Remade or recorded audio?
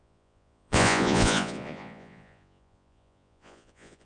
remade